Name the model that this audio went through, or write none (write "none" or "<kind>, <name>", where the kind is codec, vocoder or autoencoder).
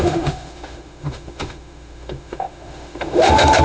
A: autoencoder, DAC-VAE